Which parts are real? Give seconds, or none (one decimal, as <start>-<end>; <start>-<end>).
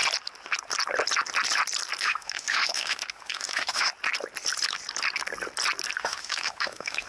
0.0-2.0; 3.9-6.0